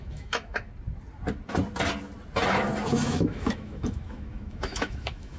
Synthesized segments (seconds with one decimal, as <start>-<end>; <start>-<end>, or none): 0.0-0.7; 2.9-5.4